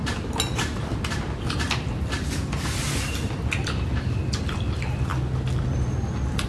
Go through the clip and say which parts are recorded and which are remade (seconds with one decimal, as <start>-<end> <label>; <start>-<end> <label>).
0.0-6.5 recorded